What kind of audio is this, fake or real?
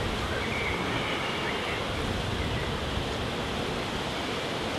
real